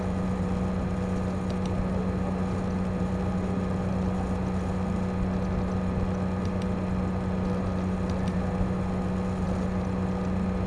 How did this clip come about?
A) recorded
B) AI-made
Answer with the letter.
A